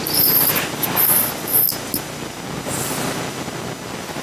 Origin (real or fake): real